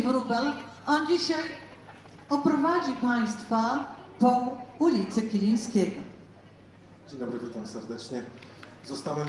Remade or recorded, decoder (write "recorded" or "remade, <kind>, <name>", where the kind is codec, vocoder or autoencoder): remade, vocoder, Vocos